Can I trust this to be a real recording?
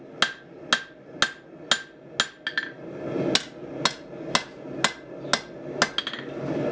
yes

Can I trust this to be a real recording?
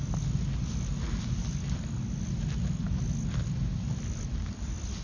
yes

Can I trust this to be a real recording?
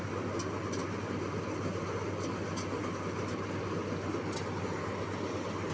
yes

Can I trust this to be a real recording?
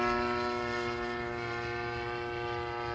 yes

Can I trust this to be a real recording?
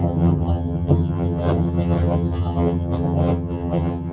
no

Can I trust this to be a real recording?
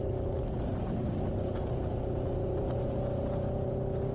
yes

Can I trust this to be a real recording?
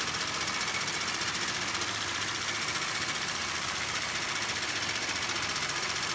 yes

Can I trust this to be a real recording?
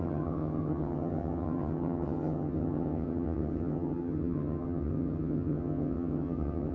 no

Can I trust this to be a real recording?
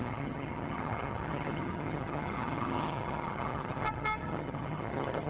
no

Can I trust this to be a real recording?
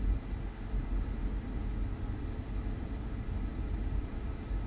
yes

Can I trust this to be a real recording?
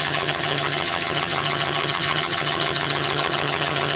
no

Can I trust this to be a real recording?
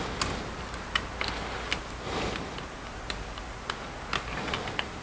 yes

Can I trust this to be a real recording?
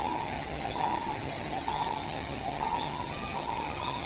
no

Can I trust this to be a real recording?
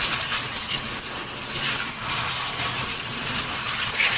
yes